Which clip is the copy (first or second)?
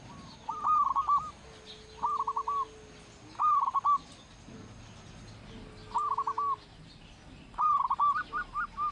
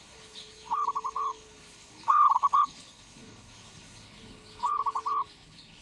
second